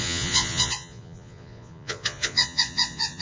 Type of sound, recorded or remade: remade